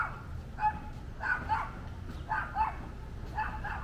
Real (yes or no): yes